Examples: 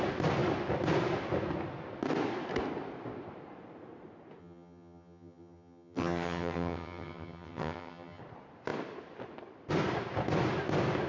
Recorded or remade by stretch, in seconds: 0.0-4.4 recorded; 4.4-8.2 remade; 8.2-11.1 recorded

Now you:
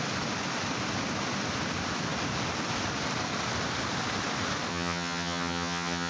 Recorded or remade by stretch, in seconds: 0.0-4.7 recorded; 4.7-6.1 remade

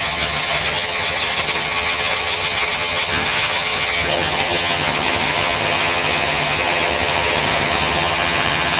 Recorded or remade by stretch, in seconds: 0.0-8.8 remade

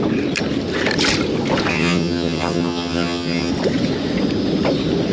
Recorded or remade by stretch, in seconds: 0.0-1.7 recorded; 1.7-3.5 remade; 3.5-5.1 recorded